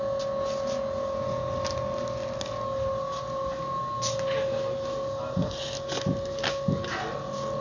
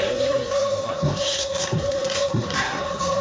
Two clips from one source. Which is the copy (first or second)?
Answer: second